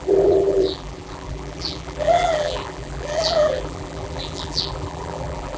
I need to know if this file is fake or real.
fake